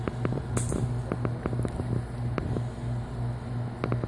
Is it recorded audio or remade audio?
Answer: recorded